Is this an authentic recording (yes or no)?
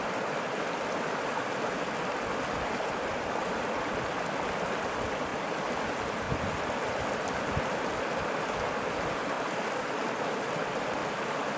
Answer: yes